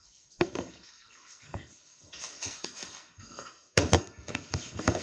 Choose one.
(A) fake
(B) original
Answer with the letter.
A